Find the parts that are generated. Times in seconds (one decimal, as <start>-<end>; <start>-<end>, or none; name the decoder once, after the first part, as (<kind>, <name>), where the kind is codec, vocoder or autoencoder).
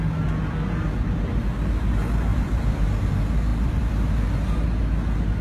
2.3-3.1 (vocoder, BigVGAN v2); 3.5-4.2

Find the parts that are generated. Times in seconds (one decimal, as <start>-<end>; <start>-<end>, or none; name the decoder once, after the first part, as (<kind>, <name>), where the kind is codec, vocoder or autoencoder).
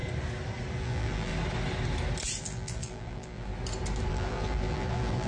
0.8-1.3 (vocoder, BigVGAN v2); 2.4-3.5; 4.1-5.3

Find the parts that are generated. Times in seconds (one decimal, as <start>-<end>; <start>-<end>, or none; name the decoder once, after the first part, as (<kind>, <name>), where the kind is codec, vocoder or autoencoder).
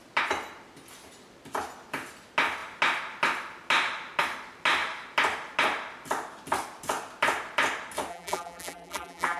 8.1-9.4 (vocoder, BigVGAN v2)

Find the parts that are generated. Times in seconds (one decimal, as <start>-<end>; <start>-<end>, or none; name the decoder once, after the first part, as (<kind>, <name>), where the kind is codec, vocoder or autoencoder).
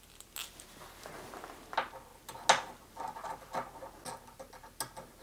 none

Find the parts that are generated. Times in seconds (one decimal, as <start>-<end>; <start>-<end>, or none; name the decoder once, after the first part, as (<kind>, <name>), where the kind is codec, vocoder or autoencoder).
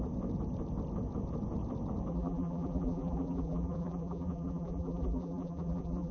2.1-6.1 (vocoder, BigVGAN v2)